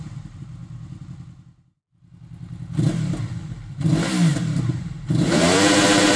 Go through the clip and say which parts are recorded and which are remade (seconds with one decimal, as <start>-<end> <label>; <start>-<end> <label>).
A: 0.0-0.6 remade; 0.6-4.3 recorded; 4.3-6.2 remade